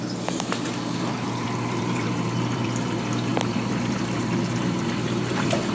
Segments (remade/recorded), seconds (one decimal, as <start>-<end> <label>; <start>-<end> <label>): 0.0-5.7 remade